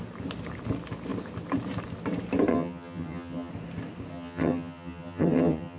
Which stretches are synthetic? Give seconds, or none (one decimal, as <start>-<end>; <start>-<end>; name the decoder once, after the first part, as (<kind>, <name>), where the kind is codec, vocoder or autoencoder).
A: 2.5-3.5 (vocoder, HiFi-GAN); 4.1-5.8